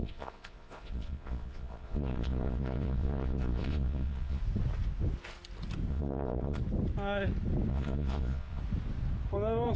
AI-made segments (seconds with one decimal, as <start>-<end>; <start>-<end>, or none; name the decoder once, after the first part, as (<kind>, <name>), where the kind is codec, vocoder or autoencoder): 0.0-4.4 (vocoder, Vocos); 5.9-6.6; 7.7-8.6